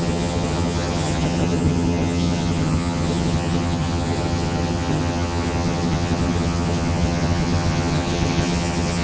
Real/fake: fake